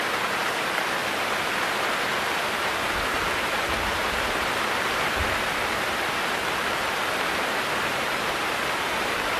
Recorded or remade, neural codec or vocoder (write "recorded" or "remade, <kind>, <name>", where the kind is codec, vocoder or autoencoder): remade, vocoder, BigVGAN v2